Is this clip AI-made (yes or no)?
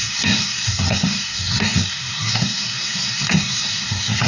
yes